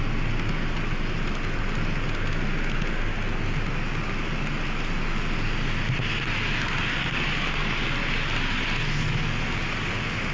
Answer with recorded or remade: recorded